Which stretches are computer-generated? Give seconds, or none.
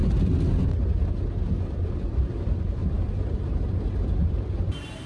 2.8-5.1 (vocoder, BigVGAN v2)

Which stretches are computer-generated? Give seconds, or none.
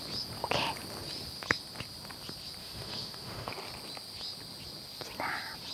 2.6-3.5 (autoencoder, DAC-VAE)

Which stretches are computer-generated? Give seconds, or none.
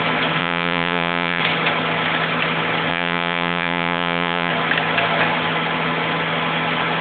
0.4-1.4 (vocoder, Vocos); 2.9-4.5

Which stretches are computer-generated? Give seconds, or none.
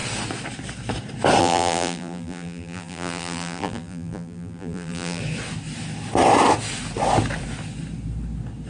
1.4-5.2 (vocoder, BigVGAN v2)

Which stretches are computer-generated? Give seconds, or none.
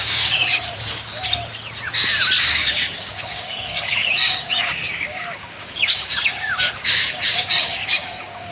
0.0-1.2 (codec, DAC); 2.4-8.5